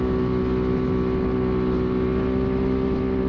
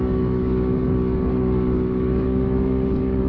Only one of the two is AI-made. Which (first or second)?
second